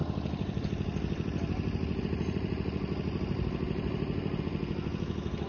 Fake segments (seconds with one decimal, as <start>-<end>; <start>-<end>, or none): none